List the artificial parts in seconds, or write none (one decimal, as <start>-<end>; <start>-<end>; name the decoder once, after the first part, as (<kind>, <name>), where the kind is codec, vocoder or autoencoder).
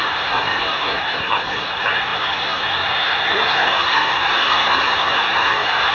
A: 0.0-5.9 (codec, SNAC)